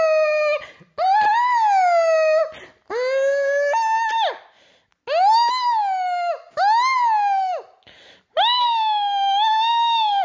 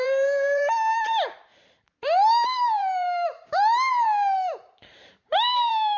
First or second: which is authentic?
first